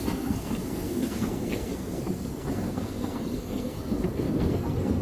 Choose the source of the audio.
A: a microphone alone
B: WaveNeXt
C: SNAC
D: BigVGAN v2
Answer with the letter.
C